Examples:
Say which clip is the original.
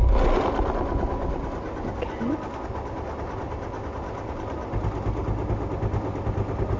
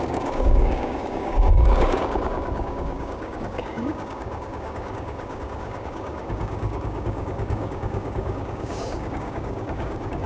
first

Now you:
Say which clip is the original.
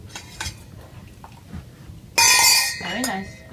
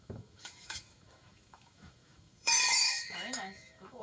first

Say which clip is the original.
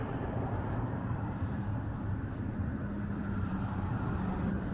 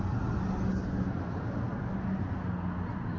second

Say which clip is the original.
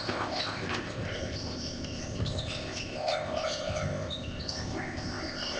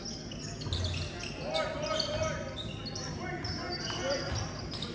second